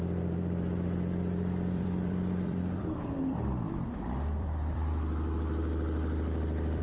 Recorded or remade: remade